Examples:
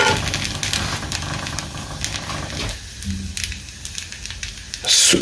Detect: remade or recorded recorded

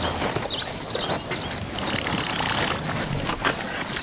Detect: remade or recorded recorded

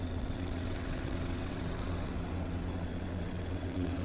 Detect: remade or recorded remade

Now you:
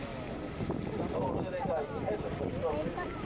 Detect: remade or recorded recorded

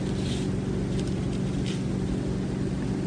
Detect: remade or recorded recorded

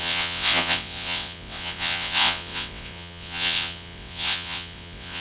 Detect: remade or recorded remade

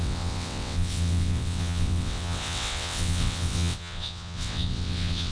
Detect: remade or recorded remade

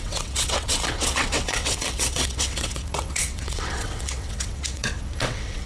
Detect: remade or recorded remade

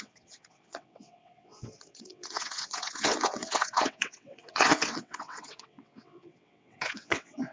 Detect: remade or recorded remade